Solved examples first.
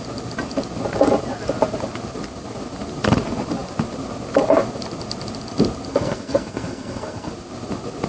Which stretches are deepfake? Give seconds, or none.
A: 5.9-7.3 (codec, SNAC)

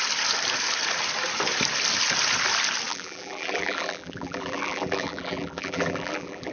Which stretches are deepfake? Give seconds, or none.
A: 2.9-6.5 (vocoder, BigVGAN v2)

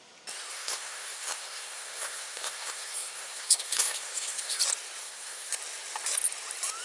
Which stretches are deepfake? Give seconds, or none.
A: 0.5-4.6 (codec, SNAC); 5.0-5.5

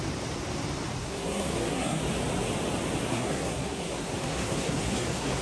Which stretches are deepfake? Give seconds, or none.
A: 1.0-2.0 (codec, SNAC); 3.1-5.4